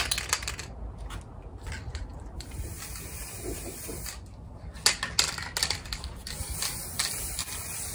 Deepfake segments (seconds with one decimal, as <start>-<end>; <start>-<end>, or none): 2.1-2.7